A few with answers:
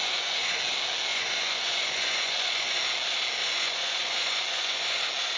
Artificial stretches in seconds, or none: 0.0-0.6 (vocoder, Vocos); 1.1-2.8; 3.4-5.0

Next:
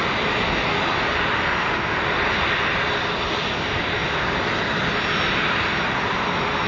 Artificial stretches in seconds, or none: none

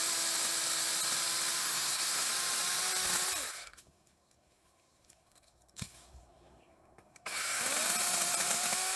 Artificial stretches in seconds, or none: 1.6-2.3 (codec, SNAC); 3.5-7.6